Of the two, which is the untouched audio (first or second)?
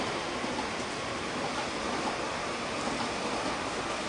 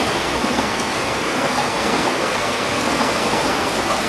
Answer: first